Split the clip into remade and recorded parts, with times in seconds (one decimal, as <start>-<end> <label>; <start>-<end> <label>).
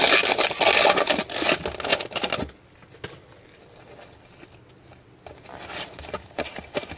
0.0-7.0 recorded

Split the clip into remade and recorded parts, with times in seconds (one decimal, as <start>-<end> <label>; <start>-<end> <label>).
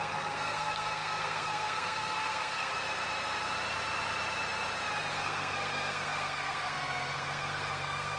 0.0-2.7 remade; 2.7-5.1 recorded; 5.1-8.2 remade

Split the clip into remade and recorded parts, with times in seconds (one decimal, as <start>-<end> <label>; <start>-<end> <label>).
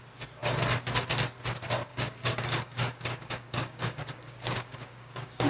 0.0-1.9 recorded; 1.9-5.5 remade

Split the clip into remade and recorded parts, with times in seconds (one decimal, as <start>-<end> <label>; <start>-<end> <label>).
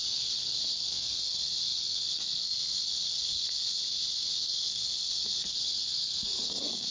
0.0-3.8 remade; 3.8-4.4 recorded; 4.4-6.9 remade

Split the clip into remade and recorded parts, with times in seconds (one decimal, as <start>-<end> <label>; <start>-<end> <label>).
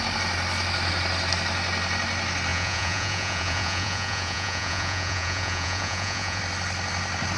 0.0-2.5 recorded; 2.5-6.4 remade; 6.4-7.4 recorded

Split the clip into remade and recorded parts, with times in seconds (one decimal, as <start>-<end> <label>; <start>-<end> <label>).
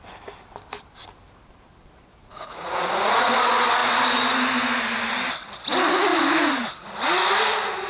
0.0-2.2 recorded; 2.2-3.3 remade; 3.3-7.9 recorded